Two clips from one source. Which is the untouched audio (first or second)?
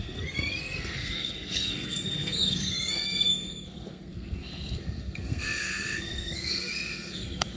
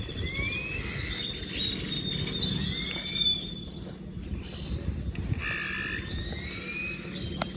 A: second